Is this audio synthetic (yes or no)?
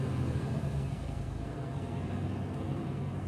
yes